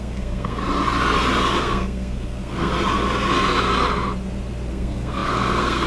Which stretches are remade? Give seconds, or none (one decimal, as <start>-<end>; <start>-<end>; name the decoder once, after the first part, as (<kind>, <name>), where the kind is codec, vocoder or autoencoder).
0.0-0.6 (codec, SNAC); 1.6-2.7; 4.7-5.9